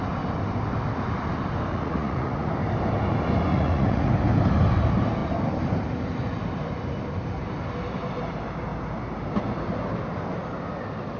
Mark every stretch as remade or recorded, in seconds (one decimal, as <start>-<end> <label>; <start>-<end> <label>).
0.0-1.7 recorded; 1.7-2.5 remade; 2.5-3.5 recorded; 3.5-4.1 remade; 4.1-11.2 recorded